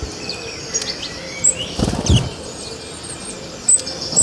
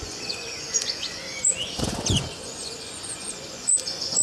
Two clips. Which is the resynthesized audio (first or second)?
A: second